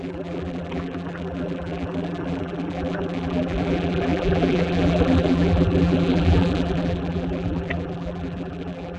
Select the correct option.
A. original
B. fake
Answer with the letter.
B